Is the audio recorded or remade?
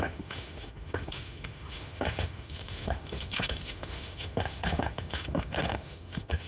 remade